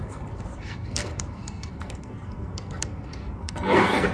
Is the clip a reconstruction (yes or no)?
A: yes